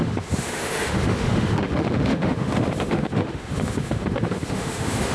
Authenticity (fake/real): fake